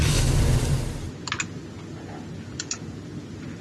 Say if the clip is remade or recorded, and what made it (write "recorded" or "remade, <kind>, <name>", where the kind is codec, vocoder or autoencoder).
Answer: recorded